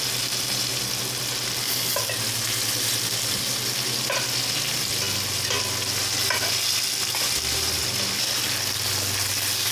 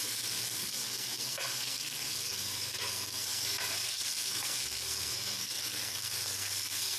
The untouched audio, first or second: first